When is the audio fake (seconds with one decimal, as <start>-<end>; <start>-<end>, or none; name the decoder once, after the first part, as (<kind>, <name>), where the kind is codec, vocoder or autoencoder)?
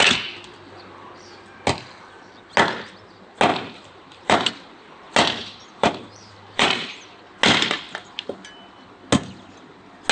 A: 3.5-4.5 (vocoder, BigVGAN v2); 5.4-7.1